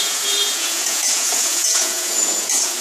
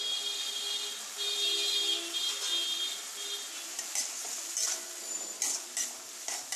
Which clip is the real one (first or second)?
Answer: second